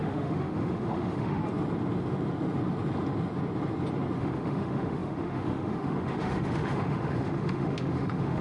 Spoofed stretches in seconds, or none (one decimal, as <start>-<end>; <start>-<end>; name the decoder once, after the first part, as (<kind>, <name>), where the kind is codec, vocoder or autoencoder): 0.0-1.4 (autoencoder, DAC-VAE); 4.2-8.4